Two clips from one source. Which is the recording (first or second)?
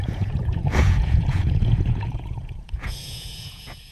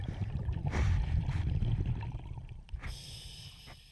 second